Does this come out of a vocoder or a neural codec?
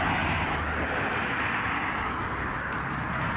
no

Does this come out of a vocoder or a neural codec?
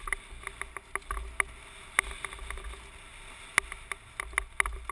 no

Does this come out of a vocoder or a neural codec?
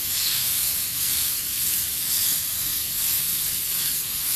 yes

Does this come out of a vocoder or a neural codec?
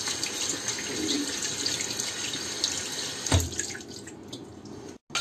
no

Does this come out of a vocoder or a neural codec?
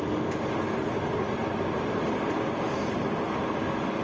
no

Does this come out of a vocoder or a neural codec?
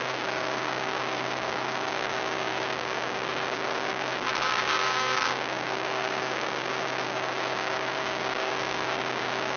yes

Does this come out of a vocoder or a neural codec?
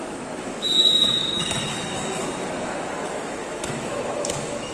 yes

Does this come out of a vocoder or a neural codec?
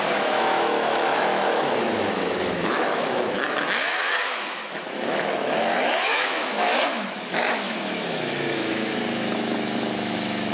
yes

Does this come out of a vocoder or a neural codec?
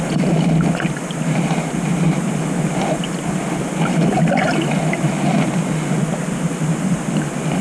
no